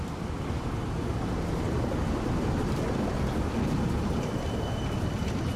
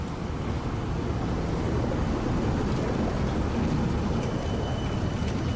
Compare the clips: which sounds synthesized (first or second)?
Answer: first